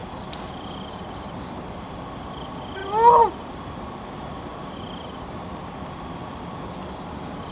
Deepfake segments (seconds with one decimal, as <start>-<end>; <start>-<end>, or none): 0.0-1.9; 2.8-6.7